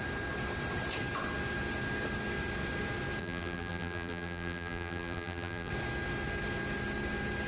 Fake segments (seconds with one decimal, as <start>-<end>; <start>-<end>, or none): 3.2-5.7